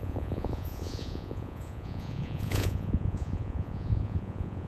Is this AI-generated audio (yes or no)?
yes